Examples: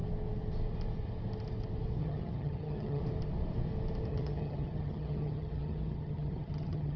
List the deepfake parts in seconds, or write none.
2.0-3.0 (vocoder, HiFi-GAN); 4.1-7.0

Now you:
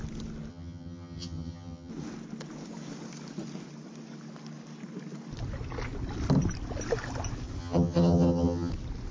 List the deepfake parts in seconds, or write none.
0.5-1.9 (vocoder, HiFi-GAN); 7.6-8.7

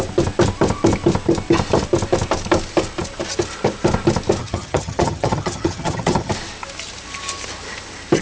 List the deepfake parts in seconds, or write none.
4.4-6.3 (vocoder, HiFi-GAN)